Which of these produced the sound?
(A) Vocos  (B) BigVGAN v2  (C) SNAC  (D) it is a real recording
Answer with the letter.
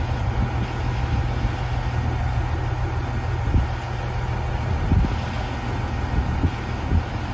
D